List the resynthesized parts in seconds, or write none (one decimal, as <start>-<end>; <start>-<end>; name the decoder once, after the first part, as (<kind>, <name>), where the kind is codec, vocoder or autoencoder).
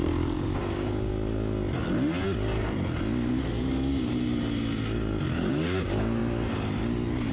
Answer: 0.0-1.1 (codec, DAC); 5.5-6.2